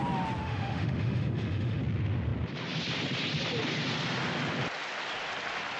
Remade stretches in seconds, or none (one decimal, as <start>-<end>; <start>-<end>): 0.4-1.8